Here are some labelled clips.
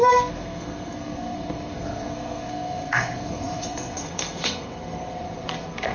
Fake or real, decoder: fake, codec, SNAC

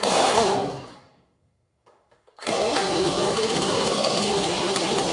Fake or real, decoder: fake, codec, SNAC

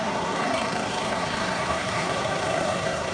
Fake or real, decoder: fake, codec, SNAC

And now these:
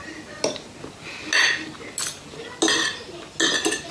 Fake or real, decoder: real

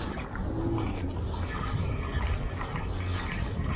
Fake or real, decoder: real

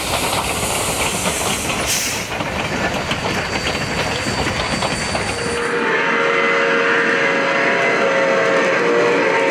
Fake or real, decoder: real